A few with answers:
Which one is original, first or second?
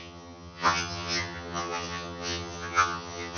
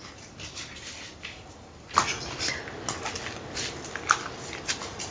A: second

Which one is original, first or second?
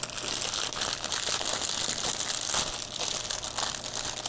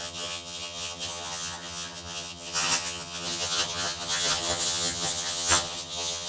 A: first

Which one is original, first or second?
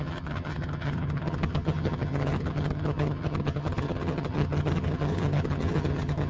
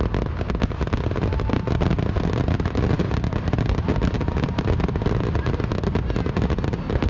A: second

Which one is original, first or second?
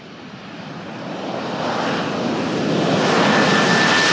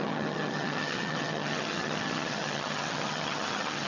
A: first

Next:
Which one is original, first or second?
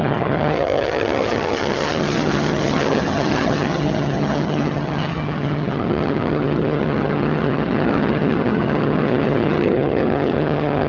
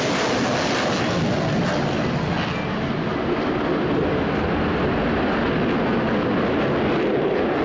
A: second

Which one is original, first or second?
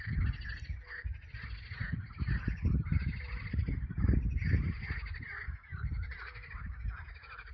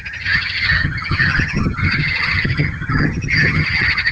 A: first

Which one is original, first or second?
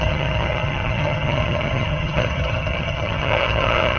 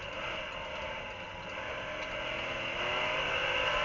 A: second